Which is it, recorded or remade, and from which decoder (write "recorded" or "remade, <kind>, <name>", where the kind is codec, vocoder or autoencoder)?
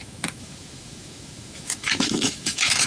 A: remade, autoencoder, DAC-VAE